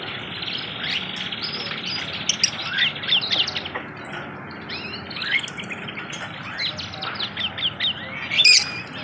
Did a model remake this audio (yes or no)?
no